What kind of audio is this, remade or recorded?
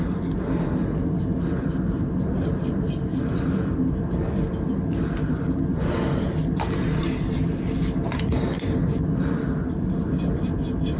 remade